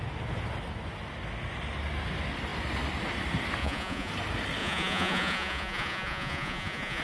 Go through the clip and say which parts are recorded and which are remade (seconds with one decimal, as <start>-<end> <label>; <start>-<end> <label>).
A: 0.0-3.6 recorded; 3.6-4.1 remade; 4.1-4.6 recorded; 4.6-7.0 remade

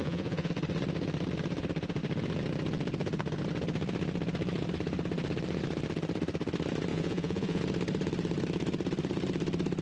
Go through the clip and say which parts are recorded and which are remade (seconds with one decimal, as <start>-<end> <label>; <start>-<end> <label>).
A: 0.0-0.5 remade; 0.5-6.9 recorded; 6.9-7.6 remade; 7.6-9.8 recorded

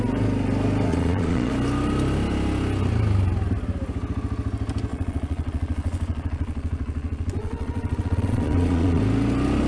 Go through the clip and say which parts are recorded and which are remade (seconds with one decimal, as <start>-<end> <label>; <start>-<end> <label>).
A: 0.0-0.9 recorded; 0.9-1.5 remade; 1.5-4.9 recorded; 4.9-9.0 remade; 9.0-9.7 recorded

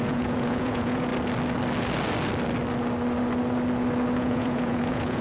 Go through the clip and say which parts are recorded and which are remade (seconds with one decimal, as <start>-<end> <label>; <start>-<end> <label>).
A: 0.0-1.1 remade; 1.1-4.2 recorded; 4.2-5.2 remade

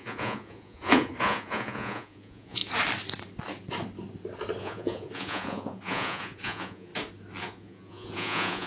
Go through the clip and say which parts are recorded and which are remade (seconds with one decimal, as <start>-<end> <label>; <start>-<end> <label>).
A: 0.0-2.6 remade; 2.6-4.6 recorded; 4.6-6.9 remade; 6.9-7.4 recorded; 7.4-8.7 remade